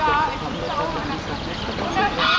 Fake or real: real